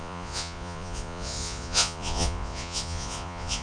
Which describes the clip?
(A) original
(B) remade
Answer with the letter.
B